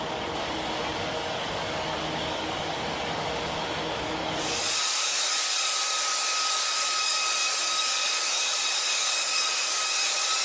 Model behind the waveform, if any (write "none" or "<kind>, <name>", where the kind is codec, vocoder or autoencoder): codec, DAC